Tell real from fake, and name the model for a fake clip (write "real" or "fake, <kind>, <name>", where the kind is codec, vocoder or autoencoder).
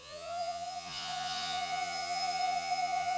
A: fake, vocoder, Vocos